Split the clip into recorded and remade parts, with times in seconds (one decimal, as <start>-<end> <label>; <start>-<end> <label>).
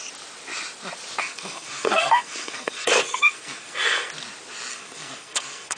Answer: 0.0-1.2 recorded; 1.2-4.1 remade; 4.1-4.7 recorded; 4.7-5.8 remade